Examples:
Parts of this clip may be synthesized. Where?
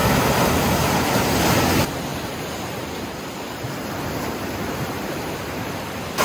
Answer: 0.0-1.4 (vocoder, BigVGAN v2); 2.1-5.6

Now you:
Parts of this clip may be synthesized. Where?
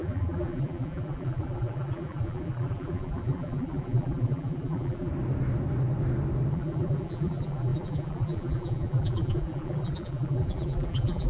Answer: 0.0-5.1 (vocoder, BigVGAN v2); 6.5-11.3